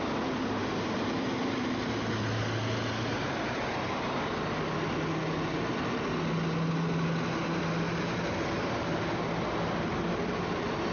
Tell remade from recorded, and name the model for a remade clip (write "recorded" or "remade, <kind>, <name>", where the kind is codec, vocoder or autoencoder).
recorded